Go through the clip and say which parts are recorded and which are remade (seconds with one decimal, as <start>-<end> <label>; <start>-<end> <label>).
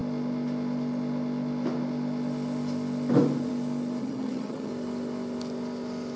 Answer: 0.0-4.0 recorded; 4.0-4.7 remade; 4.7-6.2 recorded